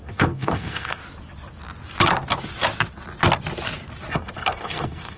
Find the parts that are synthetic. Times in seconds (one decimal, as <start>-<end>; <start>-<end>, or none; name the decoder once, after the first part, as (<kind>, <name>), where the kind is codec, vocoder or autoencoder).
0.0-1.0 (codec, SNAC); 4.1-5.2